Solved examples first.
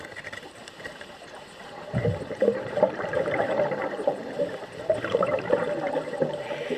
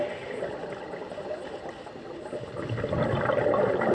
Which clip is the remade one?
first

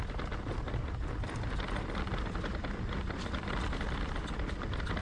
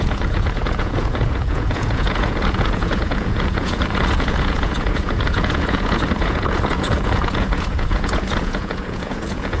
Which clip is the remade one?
second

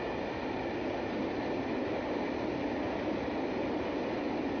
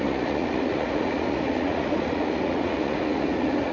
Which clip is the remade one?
second